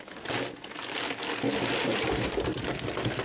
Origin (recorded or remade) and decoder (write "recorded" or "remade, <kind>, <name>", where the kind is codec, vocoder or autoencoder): recorded